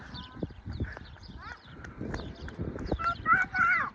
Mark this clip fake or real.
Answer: fake